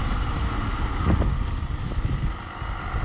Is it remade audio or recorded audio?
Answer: recorded